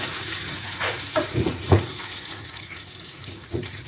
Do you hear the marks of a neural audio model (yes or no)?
yes